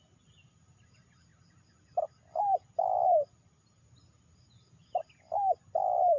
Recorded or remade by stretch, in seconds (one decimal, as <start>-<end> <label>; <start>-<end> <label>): 0.0-6.2 recorded